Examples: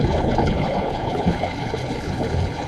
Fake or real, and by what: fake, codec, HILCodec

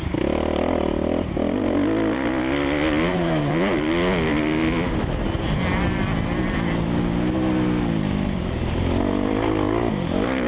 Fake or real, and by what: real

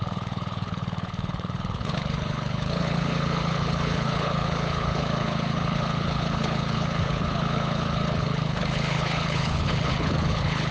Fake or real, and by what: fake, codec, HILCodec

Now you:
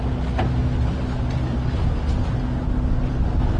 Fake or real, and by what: real